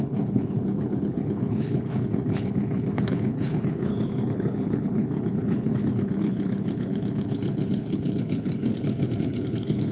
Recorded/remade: remade